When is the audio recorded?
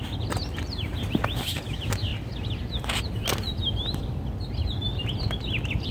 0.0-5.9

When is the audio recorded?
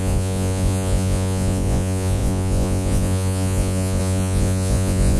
none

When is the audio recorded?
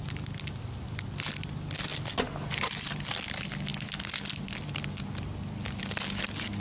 0.0-6.6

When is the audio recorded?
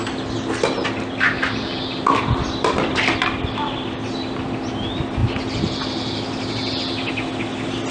0.0-7.9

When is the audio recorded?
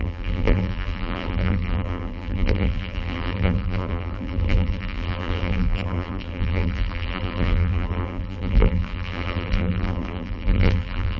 none